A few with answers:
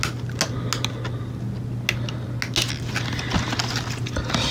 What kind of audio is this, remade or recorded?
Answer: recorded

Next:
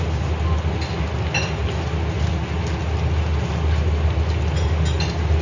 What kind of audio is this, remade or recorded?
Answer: recorded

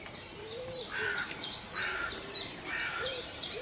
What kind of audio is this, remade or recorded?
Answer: remade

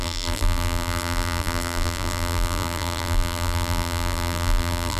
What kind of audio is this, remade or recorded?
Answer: remade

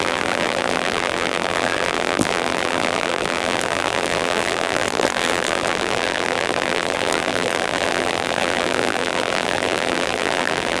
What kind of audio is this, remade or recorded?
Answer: remade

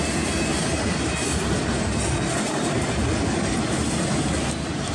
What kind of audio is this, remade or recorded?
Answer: recorded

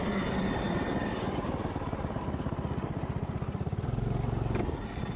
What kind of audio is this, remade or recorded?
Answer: remade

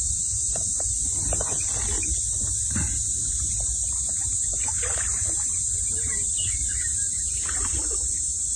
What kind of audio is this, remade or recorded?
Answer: remade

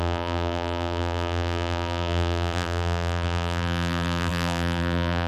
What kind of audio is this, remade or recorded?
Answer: remade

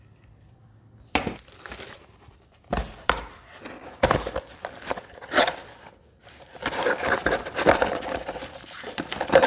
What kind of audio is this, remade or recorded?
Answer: remade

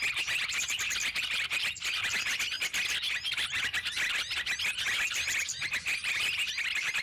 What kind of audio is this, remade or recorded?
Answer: remade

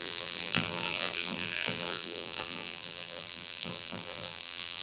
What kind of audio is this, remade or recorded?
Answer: remade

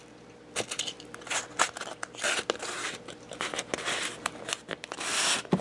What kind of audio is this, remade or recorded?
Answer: recorded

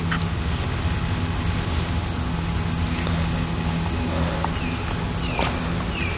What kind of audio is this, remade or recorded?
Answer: recorded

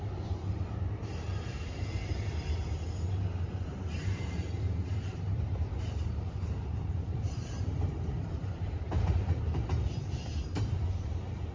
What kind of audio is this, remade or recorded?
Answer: remade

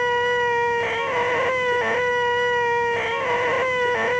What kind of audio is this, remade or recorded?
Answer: recorded